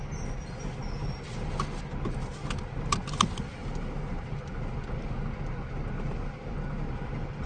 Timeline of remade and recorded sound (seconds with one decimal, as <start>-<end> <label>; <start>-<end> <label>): 0.0-7.5 recorded